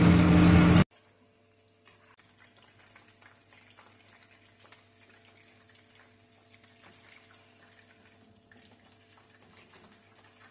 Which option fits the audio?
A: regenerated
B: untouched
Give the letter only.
B